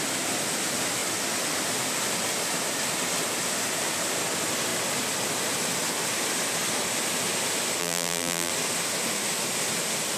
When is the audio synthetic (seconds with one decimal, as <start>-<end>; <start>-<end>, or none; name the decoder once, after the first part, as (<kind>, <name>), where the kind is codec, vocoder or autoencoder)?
7.8-8.5 (vocoder, BigVGAN v2)